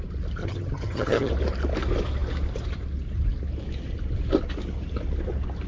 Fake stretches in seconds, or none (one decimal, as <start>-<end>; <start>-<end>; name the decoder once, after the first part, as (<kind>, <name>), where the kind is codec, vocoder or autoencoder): 0.4-1.3 (vocoder, HiFi-GAN)